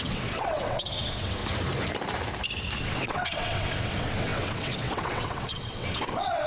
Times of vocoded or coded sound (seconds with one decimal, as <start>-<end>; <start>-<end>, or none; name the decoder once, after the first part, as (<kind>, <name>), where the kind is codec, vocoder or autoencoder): 0.0-1.4 (vocoder, WaveNeXt); 2.8-6.5